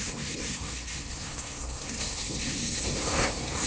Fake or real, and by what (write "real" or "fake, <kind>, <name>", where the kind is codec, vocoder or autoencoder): fake, codec, SNAC